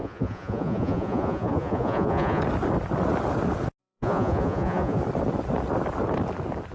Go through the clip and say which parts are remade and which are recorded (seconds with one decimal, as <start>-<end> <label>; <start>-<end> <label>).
0.0-2.4 remade; 2.4-3.8 recorded; 3.8-5.0 remade; 5.0-6.7 recorded